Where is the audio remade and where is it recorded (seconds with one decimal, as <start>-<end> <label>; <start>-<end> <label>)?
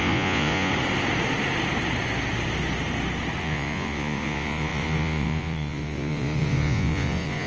0.0-0.7 remade; 0.7-3.4 recorded; 3.4-7.5 remade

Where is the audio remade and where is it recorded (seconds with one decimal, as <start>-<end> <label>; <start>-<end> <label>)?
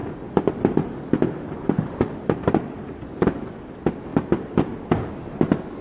0.0-3.5 remade; 3.5-4.1 recorded; 4.1-4.7 remade; 4.7-5.8 recorded